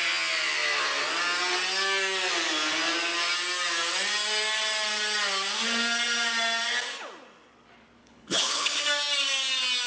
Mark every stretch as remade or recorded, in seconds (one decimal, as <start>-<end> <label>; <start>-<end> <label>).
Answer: 0.0-8.0 recorded; 8.0-8.8 remade; 8.8-9.9 recorded